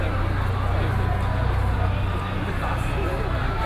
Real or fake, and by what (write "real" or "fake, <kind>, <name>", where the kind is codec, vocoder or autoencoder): real